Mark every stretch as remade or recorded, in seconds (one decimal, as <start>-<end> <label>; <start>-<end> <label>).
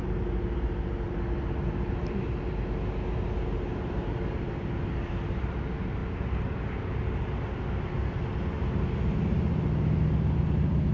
0.0-10.9 recorded